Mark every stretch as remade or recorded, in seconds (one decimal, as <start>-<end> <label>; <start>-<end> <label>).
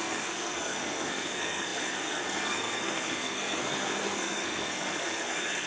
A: 0.0-5.7 remade